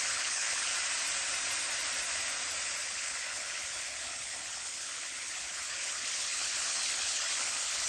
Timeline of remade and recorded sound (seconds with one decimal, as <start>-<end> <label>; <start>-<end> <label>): 0.0-0.7 remade; 0.7-2.8 recorded; 2.8-7.9 remade

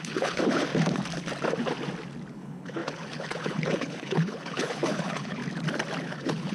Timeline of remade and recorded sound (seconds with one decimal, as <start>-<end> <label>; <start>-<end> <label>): 0.0-0.7 remade; 0.7-2.3 recorded; 2.3-5.4 remade; 5.4-6.0 recorded; 6.0-6.5 remade

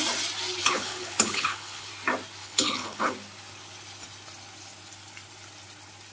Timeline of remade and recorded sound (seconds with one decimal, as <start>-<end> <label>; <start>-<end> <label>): 0.0-0.6 recorded; 0.6-1.9 remade; 1.9-2.4 recorded; 2.4-3.1 remade; 3.1-6.1 recorded